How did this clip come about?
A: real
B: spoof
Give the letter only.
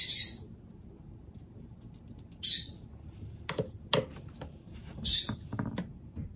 A